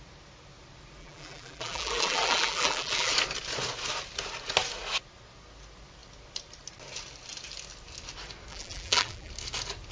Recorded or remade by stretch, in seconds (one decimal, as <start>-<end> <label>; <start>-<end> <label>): 0.0-1.0 recorded; 1.0-3.1 remade; 3.1-8.5 recorded; 8.5-9.3 remade; 9.3-9.9 recorded